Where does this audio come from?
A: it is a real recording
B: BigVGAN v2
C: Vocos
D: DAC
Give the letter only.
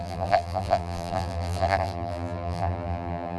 B